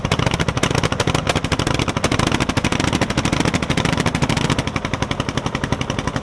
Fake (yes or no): no